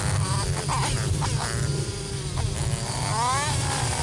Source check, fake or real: real